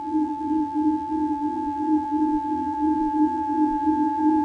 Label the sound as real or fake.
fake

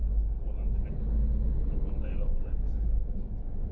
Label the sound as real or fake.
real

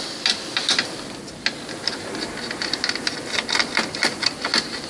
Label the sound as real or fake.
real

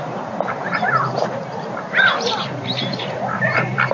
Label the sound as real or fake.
fake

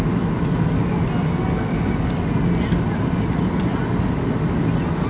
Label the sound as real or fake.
real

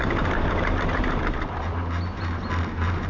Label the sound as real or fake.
fake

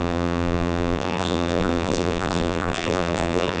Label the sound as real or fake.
fake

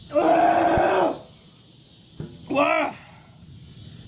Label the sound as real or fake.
real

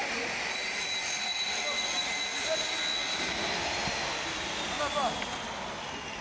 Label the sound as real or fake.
real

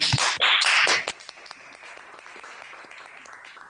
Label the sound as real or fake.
real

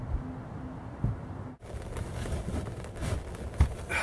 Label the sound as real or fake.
real